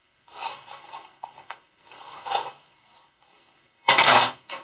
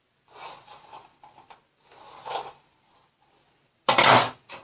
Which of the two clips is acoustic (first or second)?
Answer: second